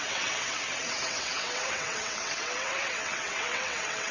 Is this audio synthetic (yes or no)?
yes